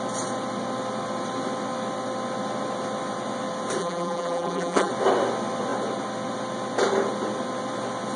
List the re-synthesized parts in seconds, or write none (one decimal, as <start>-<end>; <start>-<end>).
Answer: 3.8-4.9